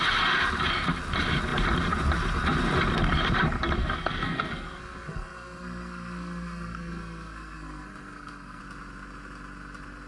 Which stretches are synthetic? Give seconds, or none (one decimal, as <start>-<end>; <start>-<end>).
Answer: 3.8-8.6